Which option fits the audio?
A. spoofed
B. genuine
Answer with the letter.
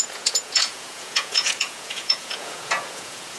A